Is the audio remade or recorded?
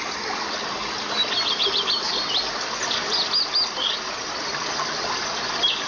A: recorded